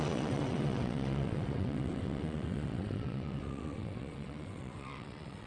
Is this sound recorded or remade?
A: remade